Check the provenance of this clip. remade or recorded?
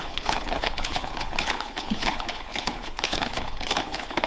remade